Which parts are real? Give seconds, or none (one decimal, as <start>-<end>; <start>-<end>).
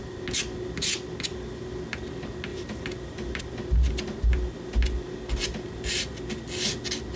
0.0-2.5; 3.4-7.2